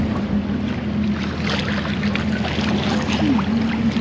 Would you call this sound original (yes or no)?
yes